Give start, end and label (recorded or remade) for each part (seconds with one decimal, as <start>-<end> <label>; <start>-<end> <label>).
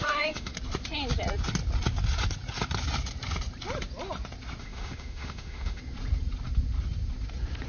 0.0-0.5 remade; 0.5-4.6 recorded; 4.6-5.8 remade; 5.8-7.7 recorded